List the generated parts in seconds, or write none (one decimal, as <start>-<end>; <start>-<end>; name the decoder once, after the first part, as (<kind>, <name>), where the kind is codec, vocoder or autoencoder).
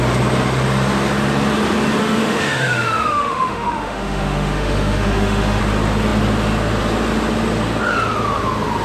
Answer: 2.0-5.6 (autoencoder, DAC-VAE)